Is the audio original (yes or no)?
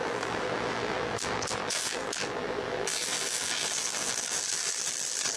no